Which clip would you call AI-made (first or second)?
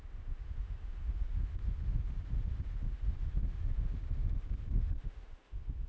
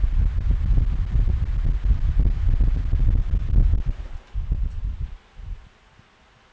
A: first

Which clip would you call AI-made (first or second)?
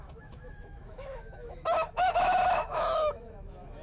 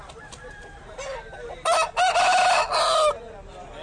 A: first